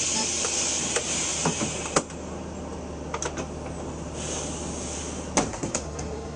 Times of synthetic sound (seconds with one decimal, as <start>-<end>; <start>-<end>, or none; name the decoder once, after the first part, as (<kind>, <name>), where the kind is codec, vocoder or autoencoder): 5.5-6.4 (codec, SNAC)